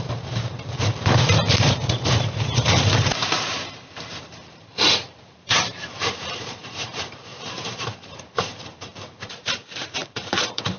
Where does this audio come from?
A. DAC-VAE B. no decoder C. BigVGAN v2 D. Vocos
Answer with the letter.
C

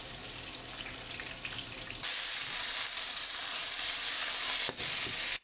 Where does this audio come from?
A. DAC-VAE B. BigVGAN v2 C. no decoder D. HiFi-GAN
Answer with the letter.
B